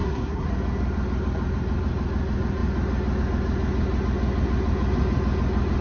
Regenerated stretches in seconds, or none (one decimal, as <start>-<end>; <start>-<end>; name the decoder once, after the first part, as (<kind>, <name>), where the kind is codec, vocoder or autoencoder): 0.0-0.5 (codec, SNAC)